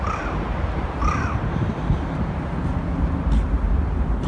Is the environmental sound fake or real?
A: real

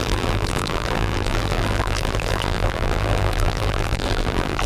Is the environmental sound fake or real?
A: fake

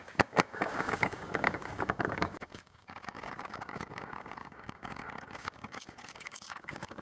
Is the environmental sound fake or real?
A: fake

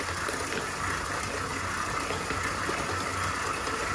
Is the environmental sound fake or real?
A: real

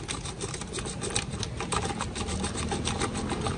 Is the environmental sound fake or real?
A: real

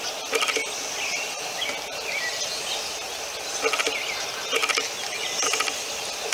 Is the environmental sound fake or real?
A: real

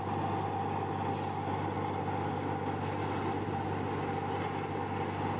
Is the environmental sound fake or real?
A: real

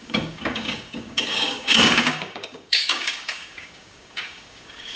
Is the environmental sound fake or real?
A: fake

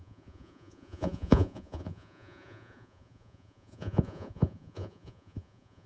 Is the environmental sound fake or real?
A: fake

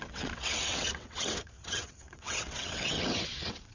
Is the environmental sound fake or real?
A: fake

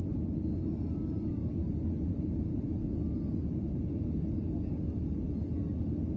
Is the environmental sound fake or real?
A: real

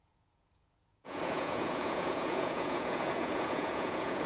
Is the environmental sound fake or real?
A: fake